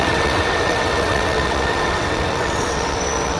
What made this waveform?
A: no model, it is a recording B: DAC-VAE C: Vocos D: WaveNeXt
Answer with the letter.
D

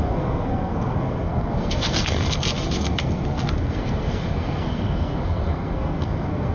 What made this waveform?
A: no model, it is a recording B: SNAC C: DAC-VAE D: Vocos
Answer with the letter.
B